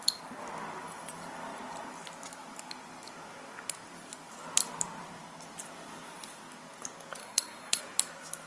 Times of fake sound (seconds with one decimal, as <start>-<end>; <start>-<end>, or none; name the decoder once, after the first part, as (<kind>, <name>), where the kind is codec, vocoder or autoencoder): 7.2-7.8 (codec, SNAC)